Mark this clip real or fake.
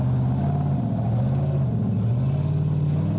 real